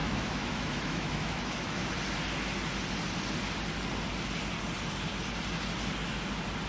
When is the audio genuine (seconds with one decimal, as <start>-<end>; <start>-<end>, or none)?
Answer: 1.9-6.7